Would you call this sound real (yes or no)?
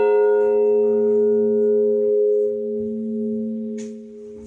yes